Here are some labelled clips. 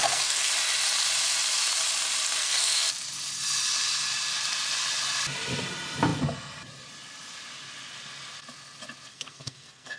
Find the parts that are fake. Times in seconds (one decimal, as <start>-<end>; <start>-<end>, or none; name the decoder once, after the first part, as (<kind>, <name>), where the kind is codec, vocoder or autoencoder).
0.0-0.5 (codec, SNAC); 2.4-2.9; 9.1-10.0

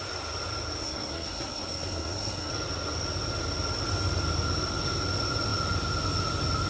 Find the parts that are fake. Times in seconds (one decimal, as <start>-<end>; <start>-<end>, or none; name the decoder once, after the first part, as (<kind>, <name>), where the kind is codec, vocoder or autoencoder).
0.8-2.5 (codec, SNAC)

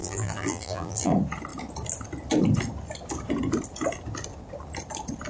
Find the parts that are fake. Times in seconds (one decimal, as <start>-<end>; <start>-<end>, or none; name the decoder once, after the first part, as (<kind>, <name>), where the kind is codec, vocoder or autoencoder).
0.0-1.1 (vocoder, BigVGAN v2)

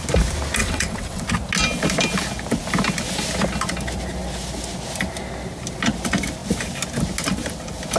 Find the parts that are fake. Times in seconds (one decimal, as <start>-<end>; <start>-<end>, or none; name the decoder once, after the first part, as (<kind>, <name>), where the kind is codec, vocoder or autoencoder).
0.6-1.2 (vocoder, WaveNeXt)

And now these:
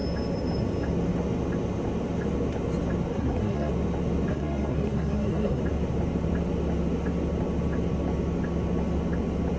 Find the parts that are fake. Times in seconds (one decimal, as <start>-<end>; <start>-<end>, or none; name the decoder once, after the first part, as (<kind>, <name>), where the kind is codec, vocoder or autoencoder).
3.1-3.7 (codec, SNAC); 4.3-5.6